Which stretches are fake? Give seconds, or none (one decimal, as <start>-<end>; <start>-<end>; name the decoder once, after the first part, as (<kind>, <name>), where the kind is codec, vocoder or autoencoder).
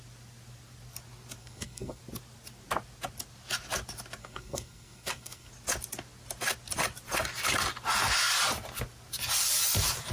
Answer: 1.4-2.0 (codec, SNAC); 4.2-5.5